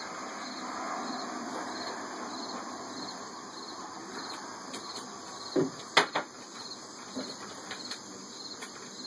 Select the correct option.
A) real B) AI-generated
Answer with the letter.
A